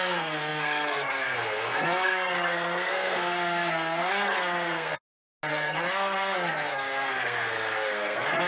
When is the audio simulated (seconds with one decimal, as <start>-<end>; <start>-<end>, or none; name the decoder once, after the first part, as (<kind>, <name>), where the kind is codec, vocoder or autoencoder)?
0.0-4.9 (codec, SNAC); 5.5-8.5